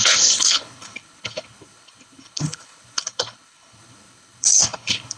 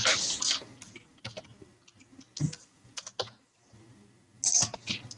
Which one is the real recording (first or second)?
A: second